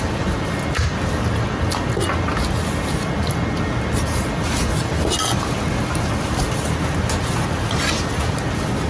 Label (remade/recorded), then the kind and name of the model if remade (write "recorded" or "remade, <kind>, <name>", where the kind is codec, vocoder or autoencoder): recorded